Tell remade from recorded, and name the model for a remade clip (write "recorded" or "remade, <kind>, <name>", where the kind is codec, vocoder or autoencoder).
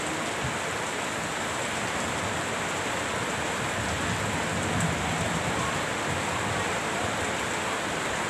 recorded